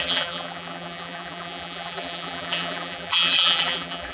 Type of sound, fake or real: fake